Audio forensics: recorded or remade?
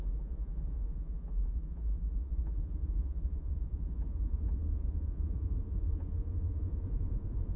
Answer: remade